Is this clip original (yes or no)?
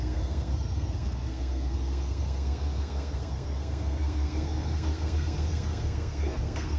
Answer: no